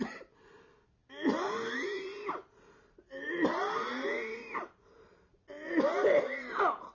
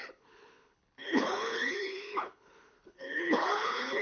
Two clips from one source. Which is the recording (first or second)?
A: first